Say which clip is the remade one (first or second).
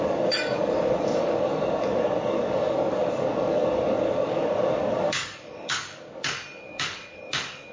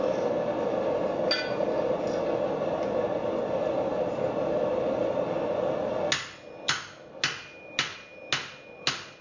first